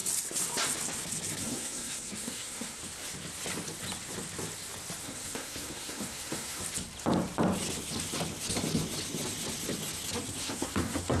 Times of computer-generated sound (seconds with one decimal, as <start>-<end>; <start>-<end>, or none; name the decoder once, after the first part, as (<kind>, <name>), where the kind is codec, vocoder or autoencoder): 1.4-2.8 (codec, SNAC); 5.0-6.6; 10.4-11.2